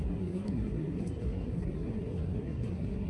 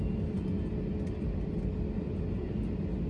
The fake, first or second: first